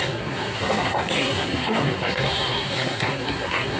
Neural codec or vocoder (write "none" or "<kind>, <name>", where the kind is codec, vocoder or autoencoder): codec, SNAC